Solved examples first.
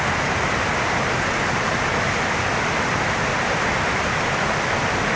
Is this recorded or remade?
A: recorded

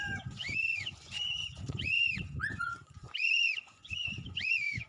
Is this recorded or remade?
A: remade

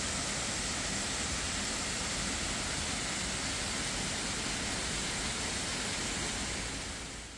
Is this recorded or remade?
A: recorded